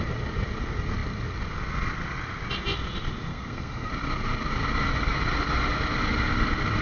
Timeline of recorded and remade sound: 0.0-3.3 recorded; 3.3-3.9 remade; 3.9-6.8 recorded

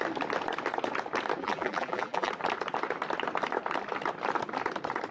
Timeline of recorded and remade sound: 0.0-1.4 recorded; 1.4-2.3 remade; 2.3-5.1 recorded